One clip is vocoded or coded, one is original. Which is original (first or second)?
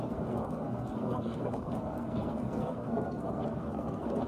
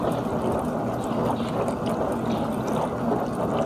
second